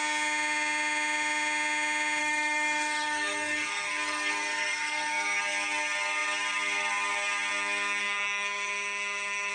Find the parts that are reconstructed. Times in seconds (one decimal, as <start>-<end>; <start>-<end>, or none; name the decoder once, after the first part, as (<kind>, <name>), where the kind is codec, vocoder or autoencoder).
2.2-5.4 (codec, SNAC); 8.0-9.5

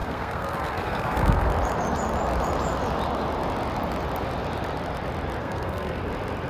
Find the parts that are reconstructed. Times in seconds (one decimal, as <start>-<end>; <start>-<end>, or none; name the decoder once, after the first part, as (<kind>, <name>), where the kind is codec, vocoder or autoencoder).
0.0-1.5 (codec, SNAC); 5.4-6.0

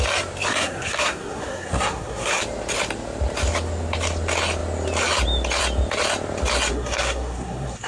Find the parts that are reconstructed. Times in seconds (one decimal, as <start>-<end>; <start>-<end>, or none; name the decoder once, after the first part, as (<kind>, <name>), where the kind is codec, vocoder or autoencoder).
0.5-2.4 (codec, SNAC); 6.7-7.9

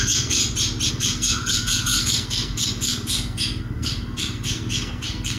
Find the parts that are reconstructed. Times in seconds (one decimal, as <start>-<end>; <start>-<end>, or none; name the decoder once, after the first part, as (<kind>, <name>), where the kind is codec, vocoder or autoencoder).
0.0-0.4 (codec, SNAC); 0.9-5.4

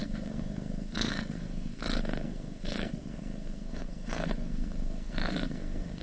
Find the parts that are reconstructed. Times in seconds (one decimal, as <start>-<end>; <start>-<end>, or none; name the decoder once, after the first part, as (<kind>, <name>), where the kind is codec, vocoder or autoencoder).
0.0-6.0 (codec, SNAC)

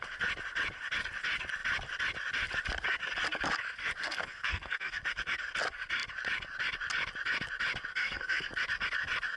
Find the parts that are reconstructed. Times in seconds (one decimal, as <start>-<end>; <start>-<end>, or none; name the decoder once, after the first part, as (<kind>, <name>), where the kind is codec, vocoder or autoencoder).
4.0-5.0 (codec, SNAC); 7.9-8.5

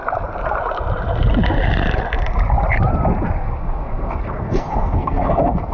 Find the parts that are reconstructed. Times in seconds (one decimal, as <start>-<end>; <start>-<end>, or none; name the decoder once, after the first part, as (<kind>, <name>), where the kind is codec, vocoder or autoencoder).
3.4-5.7 (codec, SNAC)

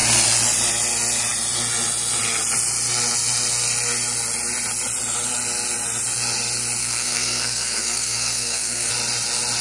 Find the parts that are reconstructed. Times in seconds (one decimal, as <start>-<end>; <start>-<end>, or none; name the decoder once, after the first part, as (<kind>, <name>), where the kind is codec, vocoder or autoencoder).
6.8-8.9 (codec, SNAC)